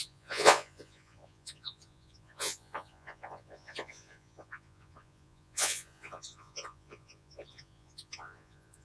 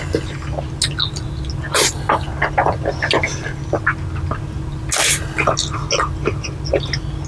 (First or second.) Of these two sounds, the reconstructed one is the first